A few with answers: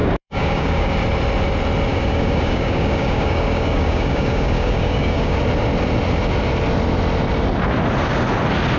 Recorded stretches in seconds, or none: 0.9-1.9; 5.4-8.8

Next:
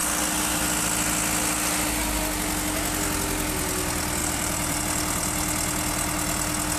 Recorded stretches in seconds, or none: 0.0-4.2; 4.8-6.8

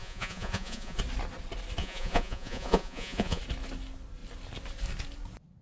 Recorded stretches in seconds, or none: 1.0-1.8; 3.4-5.6

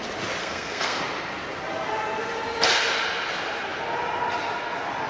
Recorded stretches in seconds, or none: 0.0-0.4; 1.0-5.1

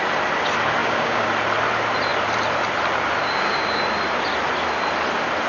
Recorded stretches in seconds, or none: 0.0-0.8; 1.3-3.2; 3.8-5.5

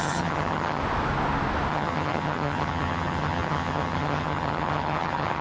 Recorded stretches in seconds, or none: 0.8-1.7

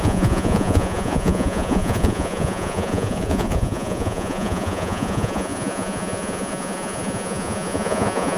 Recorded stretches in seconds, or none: none